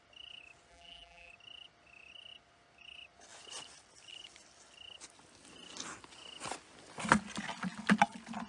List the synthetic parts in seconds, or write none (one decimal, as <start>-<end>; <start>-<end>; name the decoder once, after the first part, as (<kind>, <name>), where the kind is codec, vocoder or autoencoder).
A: 0.7-1.3 (vocoder, BigVGAN v2)

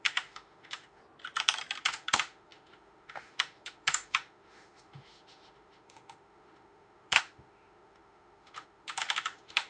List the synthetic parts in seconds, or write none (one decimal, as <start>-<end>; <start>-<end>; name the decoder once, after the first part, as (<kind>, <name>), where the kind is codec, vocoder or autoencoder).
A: 0.0-1.0 (autoencoder, DAC-VAE); 1.8-9.7

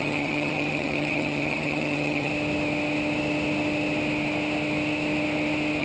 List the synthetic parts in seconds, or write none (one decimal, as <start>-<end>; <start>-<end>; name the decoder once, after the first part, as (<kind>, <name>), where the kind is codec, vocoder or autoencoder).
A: 0.0-2.3 (vocoder, HiFi-GAN)

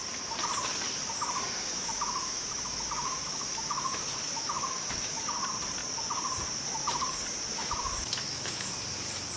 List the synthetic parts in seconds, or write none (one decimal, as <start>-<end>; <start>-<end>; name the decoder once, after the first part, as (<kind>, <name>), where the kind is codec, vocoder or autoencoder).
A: 1.7-5.2 (autoencoder, DAC-VAE); 7.6-8.7

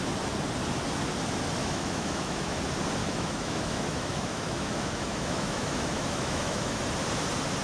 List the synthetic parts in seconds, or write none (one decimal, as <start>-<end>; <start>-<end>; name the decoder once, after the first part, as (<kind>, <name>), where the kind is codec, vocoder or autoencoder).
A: 1.6-2.6 (autoencoder, DAC-VAE); 3.0-6.8

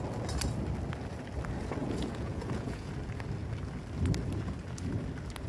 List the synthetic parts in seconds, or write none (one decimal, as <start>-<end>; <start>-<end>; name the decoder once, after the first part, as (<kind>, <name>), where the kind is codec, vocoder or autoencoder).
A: 1.8-2.9 (vocoder, Vocos)

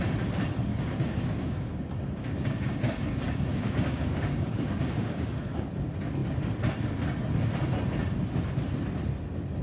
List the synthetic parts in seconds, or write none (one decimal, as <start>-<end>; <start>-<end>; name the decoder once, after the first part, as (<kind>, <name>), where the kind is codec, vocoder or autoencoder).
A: 0.7-5.7 (codec, DAC)

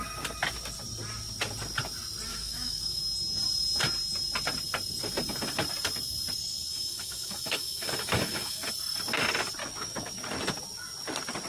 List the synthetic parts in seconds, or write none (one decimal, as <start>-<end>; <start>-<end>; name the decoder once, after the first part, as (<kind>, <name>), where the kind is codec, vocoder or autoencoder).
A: 2.3-3.0 (autoencoder, DAC-VAE); 6.7-8.7; 9.6-10.2